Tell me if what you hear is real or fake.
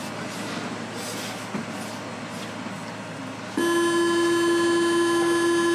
real